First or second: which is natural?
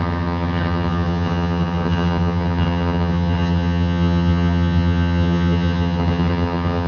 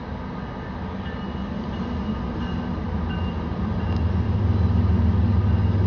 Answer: second